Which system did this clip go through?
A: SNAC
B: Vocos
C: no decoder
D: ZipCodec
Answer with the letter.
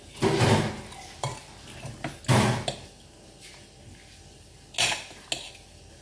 C